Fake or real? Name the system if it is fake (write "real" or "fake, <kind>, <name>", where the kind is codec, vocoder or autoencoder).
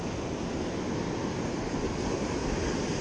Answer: real